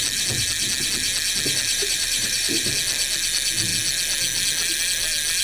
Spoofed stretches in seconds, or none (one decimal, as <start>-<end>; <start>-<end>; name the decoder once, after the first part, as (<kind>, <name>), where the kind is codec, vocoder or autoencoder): 1.7-2.7 (vocoder, BigVGAN v2)